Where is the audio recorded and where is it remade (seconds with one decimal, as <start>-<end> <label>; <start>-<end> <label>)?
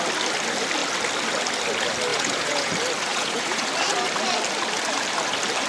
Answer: 0.0-2.1 recorded; 2.1-2.7 remade; 2.7-3.1 recorded; 3.1-3.7 remade; 3.7-5.7 recorded